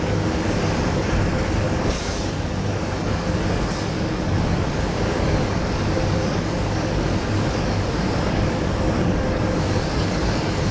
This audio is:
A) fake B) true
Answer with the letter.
A